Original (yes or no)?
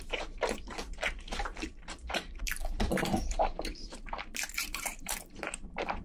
no